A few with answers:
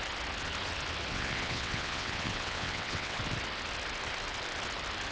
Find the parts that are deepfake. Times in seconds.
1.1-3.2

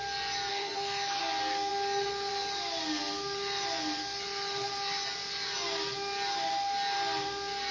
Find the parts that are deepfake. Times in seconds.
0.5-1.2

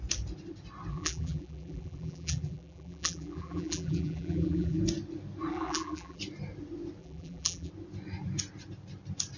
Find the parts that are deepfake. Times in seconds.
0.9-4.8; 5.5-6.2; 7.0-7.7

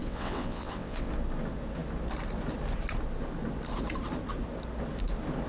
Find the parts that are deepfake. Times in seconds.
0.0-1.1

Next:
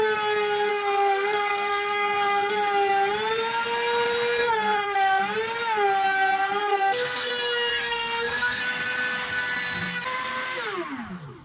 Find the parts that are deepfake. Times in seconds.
0.7-2.5; 4.4-5.2; 6.6-7.3; 7.7-8.6

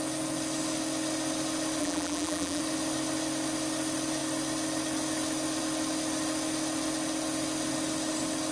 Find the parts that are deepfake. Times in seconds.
1.8-2.6

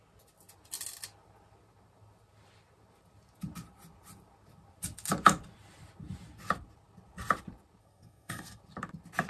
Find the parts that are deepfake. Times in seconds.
7.8-8.6

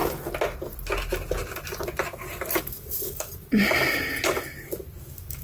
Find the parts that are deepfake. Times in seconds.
2.6-3.3; 5.0-5.4